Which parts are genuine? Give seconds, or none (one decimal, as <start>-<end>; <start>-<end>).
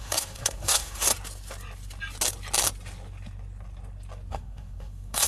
1.1-4.3